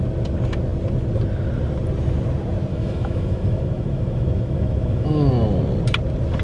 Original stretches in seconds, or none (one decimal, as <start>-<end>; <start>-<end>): 0.0-2.7; 5.3-6.4